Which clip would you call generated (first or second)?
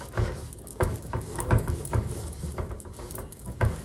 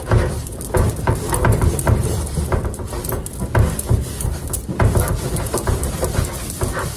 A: first